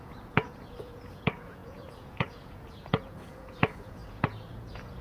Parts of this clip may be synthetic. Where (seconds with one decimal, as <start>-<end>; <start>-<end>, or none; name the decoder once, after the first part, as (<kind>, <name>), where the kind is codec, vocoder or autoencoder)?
0.0-5.0 (vocoder, Vocos)